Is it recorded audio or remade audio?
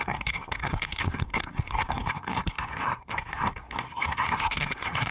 remade